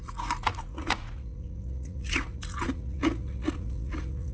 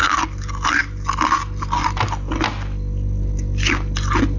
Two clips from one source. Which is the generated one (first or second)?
first